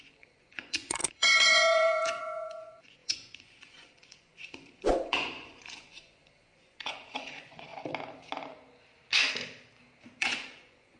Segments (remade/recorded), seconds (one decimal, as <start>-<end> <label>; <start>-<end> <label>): 0.0-7.7 remade; 7.7-10.2 recorded; 10.2-11.0 remade